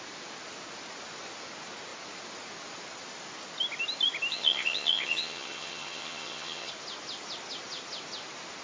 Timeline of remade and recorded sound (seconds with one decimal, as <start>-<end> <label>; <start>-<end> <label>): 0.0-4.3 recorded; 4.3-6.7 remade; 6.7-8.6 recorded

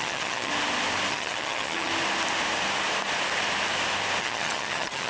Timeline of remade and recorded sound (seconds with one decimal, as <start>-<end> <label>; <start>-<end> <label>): 0.0-0.5 remade; 0.5-1.1 recorded; 1.1-1.9 remade; 1.9-4.2 recorded; 4.2-5.1 remade

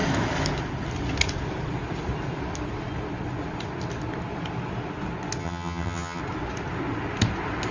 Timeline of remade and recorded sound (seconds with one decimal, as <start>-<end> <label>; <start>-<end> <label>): 0.0-5.4 recorded; 5.4-6.2 remade; 6.2-7.7 recorded

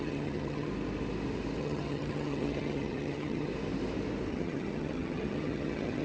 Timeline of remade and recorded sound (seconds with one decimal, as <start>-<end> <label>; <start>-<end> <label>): 0.0-0.7 remade; 0.7-1.6 recorded; 1.6-3.5 remade; 3.5-4.3 recorded; 4.3-6.0 remade

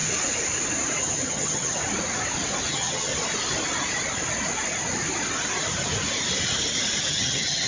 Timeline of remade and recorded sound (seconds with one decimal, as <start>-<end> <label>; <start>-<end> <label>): 0.0-1.0 recorded; 1.0-1.8 remade; 1.8-2.7 recorded; 2.7-3.1 remade; 3.1-7.1 recorded; 7.1-7.7 remade

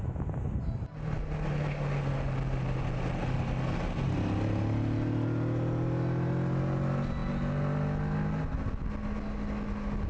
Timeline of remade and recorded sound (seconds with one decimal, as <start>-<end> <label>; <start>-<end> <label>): 0.0-10.1 recorded